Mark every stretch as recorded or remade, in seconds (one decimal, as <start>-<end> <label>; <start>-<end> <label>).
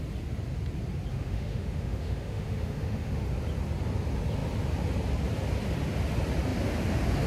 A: 0.0-1.1 recorded; 1.1-3.2 remade; 3.2-7.3 recorded